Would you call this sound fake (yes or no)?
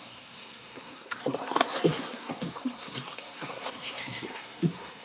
yes